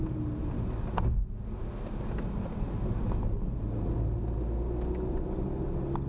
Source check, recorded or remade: recorded